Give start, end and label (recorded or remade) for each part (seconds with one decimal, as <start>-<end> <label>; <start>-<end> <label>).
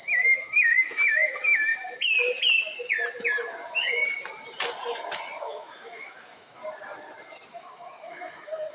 0.0-1.7 remade; 1.7-5.4 recorded; 5.4-6.6 remade; 6.6-7.5 recorded; 7.5-8.7 remade